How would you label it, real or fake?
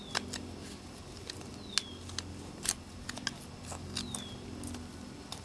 real